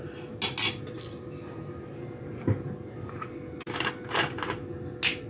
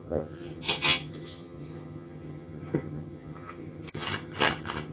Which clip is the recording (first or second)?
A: first